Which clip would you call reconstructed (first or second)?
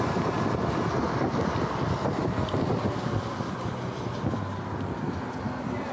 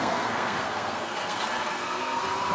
second